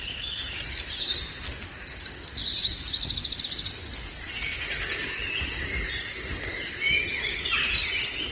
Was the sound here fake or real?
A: real